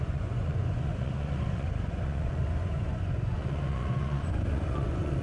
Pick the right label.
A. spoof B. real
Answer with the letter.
A